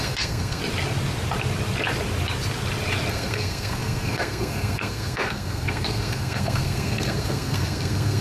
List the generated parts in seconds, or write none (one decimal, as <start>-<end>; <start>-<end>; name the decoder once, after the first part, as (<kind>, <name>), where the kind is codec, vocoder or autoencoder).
0.0-0.6 (codec, SNAC); 3.1-8.2